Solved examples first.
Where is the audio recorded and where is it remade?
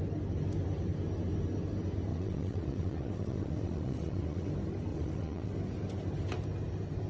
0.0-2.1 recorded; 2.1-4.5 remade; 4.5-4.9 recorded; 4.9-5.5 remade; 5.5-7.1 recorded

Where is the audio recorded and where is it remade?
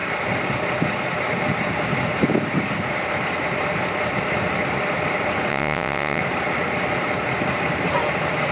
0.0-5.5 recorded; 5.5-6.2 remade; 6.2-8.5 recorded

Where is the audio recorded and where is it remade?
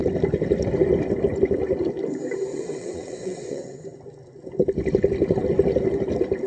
0.0-2.5 recorded; 2.5-3.8 remade; 3.8-6.5 recorded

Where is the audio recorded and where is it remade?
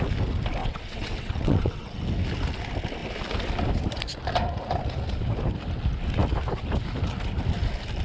0.0-0.6 recorded; 0.6-2.0 remade; 2.0-8.0 recorded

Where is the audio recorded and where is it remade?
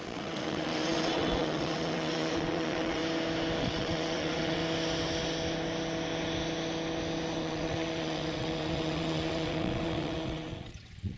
0.0-3.0 remade; 3.0-3.6 recorded; 3.6-4.6 remade; 4.6-7.4 recorded; 7.4-11.2 remade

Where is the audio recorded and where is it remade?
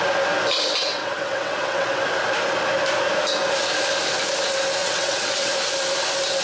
0.0-0.9 recorded; 0.9-2.0 remade; 2.0-4.8 recorded; 4.8-5.5 remade; 5.5-6.4 recorded